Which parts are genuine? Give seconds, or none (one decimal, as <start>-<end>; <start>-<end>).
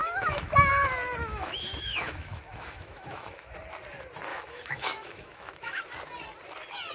0.7-1.2; 3.5-4.3; 5.8-6.9